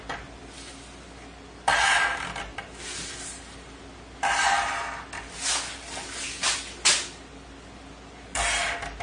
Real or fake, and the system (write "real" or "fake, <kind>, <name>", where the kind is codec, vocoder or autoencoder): real